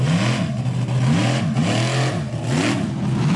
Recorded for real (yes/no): yes